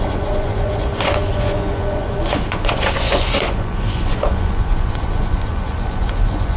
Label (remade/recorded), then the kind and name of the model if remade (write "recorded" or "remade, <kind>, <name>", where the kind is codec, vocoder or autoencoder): remade, vocoder, Vocos